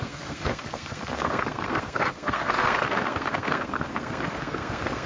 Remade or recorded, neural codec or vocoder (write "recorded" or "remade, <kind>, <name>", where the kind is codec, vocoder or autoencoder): remade, codec, SNAC